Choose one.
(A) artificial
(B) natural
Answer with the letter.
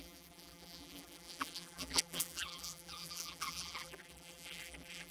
A